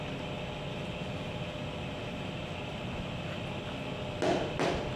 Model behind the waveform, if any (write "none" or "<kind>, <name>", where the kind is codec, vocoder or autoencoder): none